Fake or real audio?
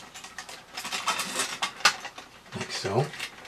real